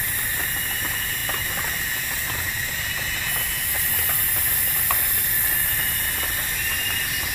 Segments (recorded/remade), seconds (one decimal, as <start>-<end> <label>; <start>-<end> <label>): 0.0-7.3 recorded